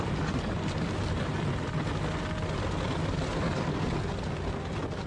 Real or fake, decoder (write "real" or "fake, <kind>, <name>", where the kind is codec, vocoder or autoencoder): real